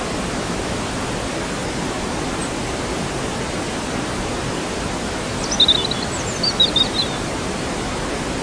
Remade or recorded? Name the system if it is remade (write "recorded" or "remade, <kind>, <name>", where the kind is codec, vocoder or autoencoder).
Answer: recorded